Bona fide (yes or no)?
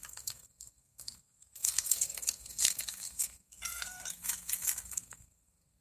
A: no